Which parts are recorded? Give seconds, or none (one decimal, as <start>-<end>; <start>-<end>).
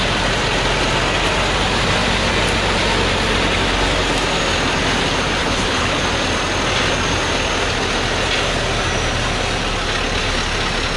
0.0-5.4; 6.0-11.0